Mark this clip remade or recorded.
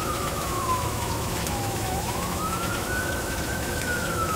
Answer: remade